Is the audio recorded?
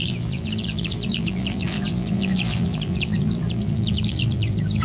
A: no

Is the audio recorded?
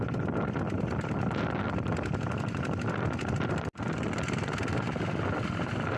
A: yes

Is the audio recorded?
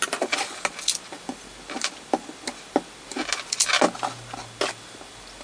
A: yes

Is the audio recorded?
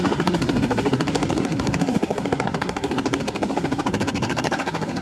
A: no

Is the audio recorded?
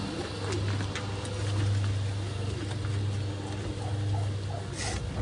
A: yes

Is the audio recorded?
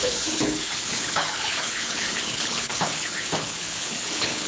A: no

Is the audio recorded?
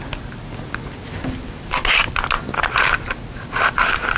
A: yes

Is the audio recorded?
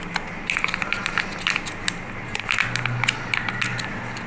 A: yes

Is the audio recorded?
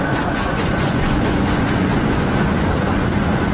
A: no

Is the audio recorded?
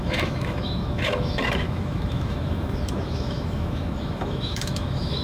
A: no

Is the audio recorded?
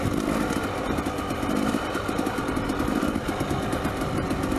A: yes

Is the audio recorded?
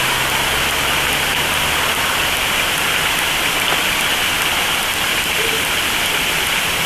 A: yes